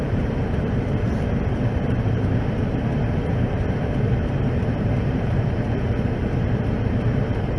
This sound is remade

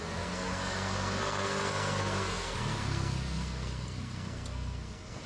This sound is remade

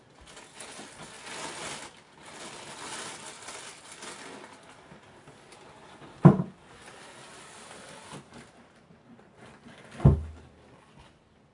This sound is recorded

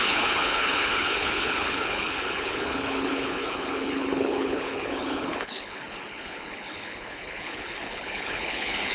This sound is remade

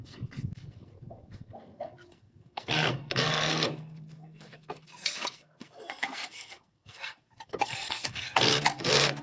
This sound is remade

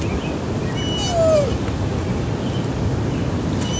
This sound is recorded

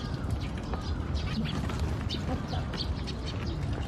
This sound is recorded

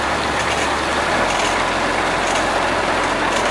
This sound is recorded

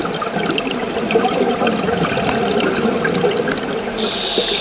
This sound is recorded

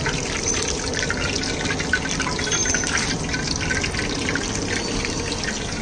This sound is recorded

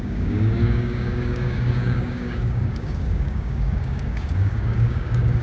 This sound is remade